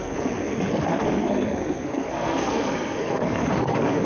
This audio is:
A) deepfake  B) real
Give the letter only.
A